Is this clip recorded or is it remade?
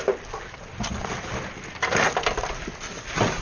recorded